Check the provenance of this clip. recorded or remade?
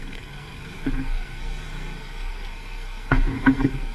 remade